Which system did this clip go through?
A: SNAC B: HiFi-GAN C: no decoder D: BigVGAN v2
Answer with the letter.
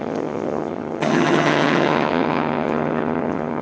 B